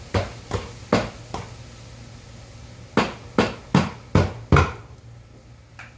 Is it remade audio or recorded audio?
recorded